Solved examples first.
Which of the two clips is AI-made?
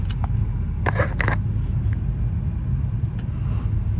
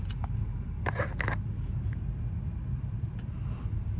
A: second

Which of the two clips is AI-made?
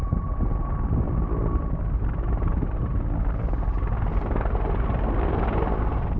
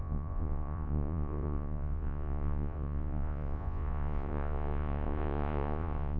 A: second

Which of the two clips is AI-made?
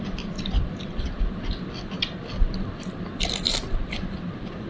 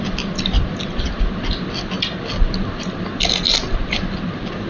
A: first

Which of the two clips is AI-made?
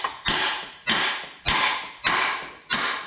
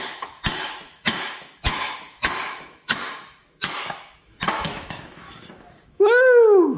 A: second